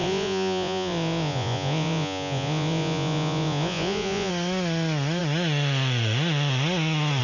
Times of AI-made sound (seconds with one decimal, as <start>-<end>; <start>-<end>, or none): 0.0-4.3